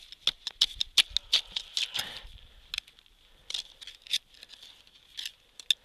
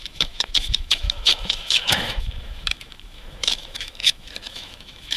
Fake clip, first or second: second